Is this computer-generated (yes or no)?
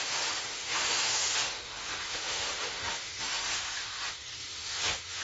yes